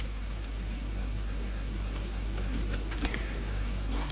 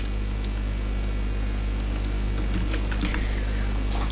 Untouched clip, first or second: second